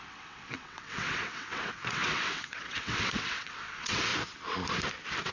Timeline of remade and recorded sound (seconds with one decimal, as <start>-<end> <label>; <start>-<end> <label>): 0.0-4.1 remade; 4.1-5.3 recorded